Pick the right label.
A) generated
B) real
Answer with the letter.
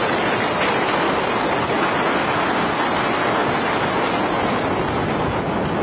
B